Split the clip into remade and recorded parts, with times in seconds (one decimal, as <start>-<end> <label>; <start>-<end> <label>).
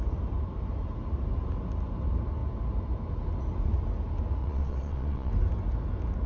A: 0.0-4.4 recorded; 4.4-5.3 remade; 5.3-6.3 recorded